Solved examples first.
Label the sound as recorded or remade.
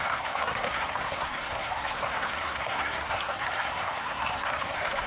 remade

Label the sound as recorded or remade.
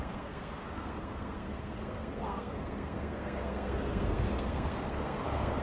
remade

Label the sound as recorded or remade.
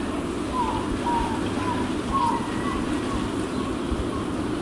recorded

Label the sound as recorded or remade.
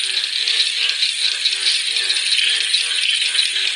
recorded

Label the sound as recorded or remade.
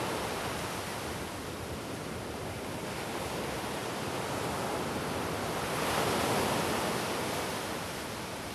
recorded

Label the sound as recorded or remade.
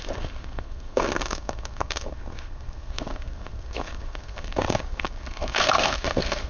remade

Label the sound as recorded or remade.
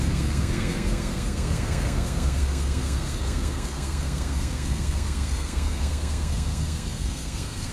remade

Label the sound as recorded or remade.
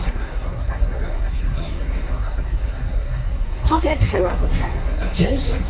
remade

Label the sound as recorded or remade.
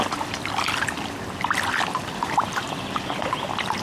recorded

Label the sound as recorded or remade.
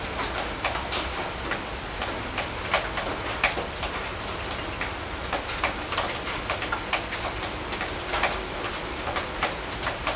recorded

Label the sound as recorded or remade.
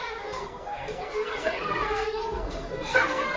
remade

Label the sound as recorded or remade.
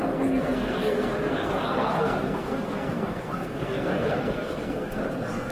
remade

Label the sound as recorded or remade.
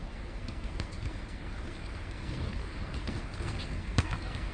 remade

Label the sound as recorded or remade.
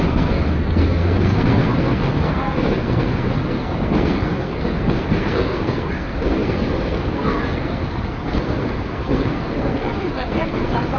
remade